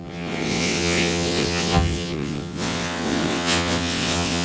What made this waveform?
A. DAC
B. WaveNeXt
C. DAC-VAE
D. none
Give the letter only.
B